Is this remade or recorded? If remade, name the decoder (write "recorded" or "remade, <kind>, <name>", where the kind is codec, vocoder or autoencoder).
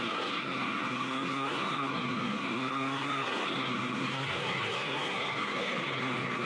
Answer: remade, codec, SNAC